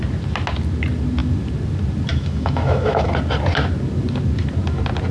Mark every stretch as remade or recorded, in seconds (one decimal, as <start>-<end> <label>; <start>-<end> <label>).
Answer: 0.0-2.1 recorded; 2.1-3.1 remade; 3.1-5.1 recorded